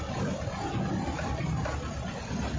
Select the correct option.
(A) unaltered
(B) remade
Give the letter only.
A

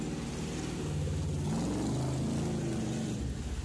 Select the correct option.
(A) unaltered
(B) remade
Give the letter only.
A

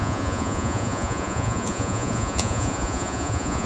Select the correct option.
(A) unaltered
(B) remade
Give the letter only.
B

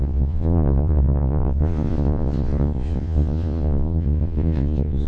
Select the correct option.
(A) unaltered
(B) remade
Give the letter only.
B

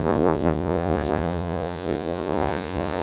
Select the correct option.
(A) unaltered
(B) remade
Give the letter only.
B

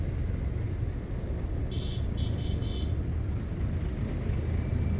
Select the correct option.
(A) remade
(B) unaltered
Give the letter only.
B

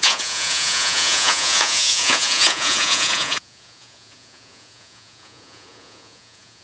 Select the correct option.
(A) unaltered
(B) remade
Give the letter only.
B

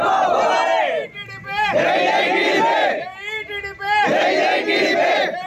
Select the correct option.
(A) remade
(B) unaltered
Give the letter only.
B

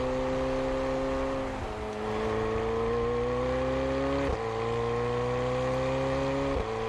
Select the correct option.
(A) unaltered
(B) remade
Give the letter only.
A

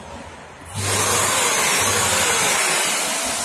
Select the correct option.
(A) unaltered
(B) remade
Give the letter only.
A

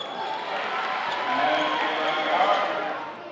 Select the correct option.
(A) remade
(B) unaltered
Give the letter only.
B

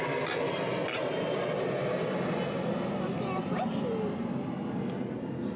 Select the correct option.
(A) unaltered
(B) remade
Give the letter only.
A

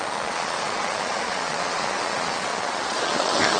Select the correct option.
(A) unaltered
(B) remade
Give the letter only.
B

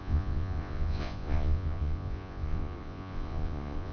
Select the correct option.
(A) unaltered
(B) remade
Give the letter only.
B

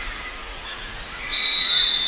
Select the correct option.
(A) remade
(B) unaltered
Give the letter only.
A